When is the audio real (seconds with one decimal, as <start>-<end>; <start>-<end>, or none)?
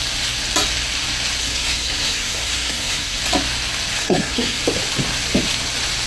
0.0-1.4; 3.2-4.0; 4.6-6.1